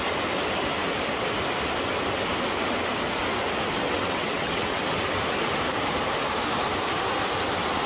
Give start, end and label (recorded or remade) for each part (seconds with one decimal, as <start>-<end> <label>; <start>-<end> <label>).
0.0-3.9 recorded; 3.9-4.8 remade; 4.8-7.9 recorded